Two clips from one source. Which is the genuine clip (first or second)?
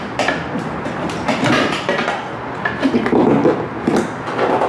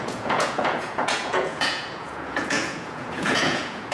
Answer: first